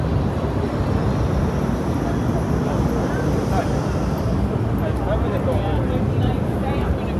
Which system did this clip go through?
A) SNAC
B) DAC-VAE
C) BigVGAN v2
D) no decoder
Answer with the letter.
D